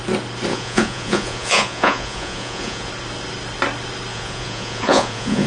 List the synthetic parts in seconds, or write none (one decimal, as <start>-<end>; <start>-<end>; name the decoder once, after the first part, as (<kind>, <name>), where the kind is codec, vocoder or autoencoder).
0.5-2.9 (vocoder, Vocos); 4.1-5.5